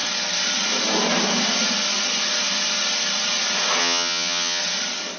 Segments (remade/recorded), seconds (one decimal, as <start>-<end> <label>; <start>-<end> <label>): 0.0-3.8 recorded; 3.8-4.6 remade; 4.6-5.2 recorded